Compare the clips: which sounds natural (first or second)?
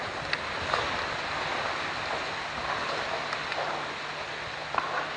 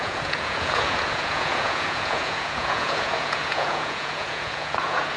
first